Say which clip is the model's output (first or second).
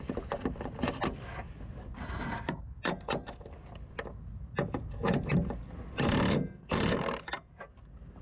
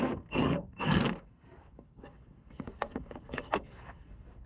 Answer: second